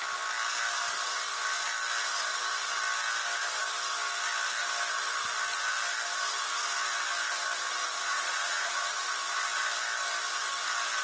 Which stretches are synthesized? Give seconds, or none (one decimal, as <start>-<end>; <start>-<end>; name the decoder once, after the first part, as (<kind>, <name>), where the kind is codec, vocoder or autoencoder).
7.8-9.1 (vocoder, Vocos)